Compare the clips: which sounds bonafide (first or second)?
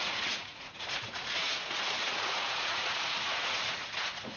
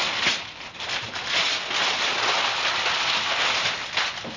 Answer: second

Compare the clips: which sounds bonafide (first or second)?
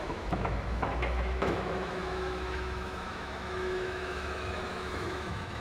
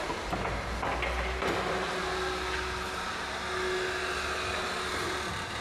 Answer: second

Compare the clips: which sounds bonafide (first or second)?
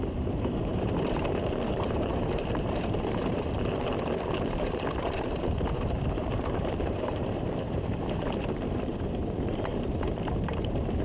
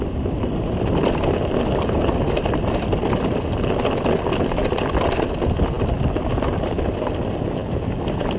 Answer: second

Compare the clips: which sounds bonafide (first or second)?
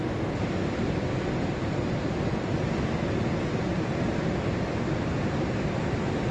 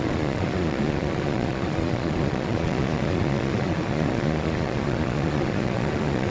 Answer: first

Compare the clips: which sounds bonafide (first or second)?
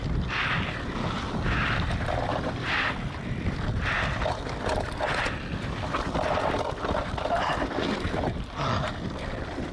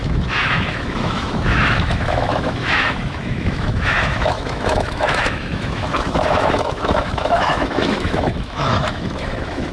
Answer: first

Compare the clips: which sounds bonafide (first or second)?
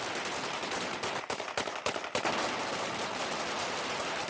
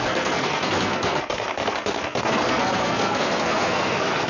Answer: first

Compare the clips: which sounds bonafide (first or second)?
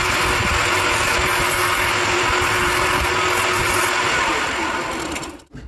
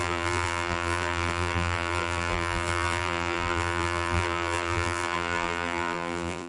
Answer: first